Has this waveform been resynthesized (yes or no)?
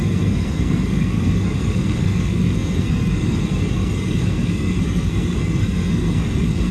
yes